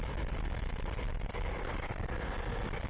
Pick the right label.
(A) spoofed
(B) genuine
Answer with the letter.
B